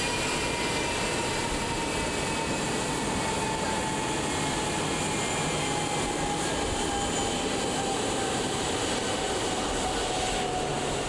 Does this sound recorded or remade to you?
recorded